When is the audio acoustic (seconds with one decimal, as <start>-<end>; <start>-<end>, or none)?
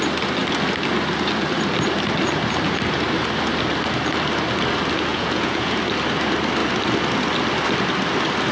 0.0-5.1; 5.8-8.5